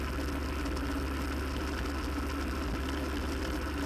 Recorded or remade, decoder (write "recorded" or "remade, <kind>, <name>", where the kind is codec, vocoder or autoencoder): recorded